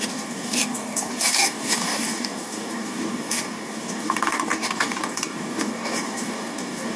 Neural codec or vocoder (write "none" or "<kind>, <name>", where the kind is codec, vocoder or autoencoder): codec, DAC